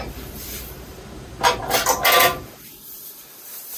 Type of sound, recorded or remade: remade